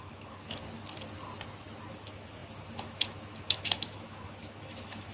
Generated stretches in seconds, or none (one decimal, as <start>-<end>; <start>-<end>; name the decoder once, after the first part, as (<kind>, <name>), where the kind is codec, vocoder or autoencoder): 0.0-0.6 (autoencoder, DAC-VAE); 1.9-5.1